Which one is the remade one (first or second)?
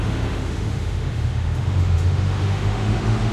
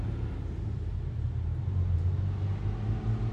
first